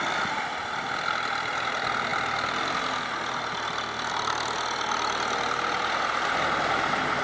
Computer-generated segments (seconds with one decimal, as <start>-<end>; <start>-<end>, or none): none